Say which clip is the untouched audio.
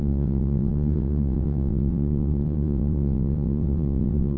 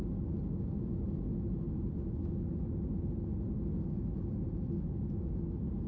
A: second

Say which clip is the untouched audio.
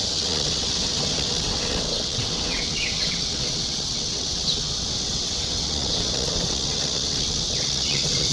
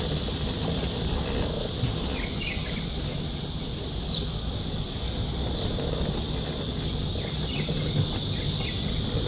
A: second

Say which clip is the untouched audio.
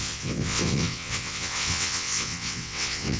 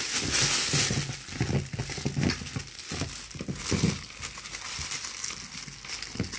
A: second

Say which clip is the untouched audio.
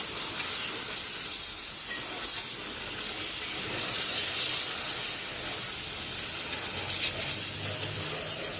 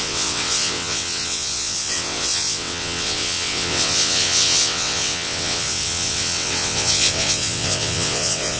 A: first